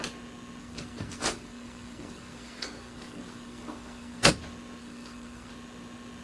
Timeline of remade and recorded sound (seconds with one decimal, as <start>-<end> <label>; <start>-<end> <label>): 0.0-0.6 recorded; 0.6-4.3 remade; 4.3-4.8 recorded; 4.8-5.5 remade; 5.5-6.2 recorded